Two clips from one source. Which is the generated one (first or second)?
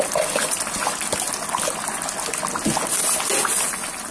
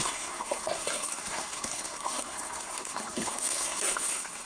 second